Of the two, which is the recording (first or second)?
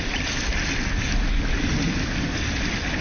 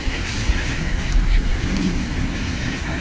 first